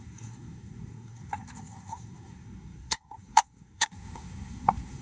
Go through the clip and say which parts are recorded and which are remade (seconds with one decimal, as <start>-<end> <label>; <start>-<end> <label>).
0.0-5.0 remade